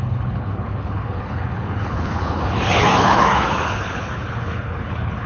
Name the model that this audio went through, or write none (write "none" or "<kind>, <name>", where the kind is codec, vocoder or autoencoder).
codec, HILCodec